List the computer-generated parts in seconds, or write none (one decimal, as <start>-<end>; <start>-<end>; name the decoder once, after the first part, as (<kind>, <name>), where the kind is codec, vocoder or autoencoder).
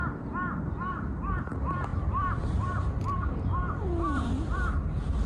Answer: 1.9-2.9 (vocoder, BigVGAN v2)